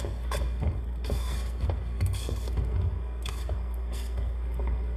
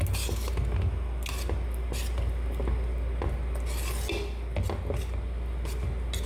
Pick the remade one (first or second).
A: first